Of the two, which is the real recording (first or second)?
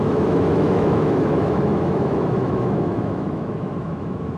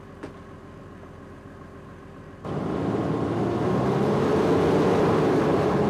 second